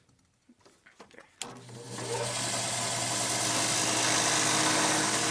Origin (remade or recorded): recorded